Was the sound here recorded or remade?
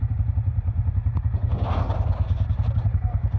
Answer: recorded